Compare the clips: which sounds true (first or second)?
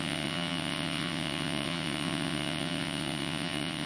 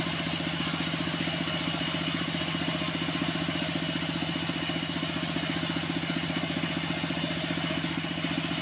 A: second